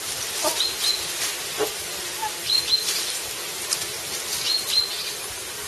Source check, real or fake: real